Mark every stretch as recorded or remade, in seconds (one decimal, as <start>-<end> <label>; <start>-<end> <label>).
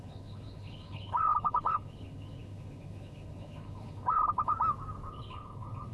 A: 0.0-4.5 remade; 4.5-5.1 recorded; 5.1-5.9 remade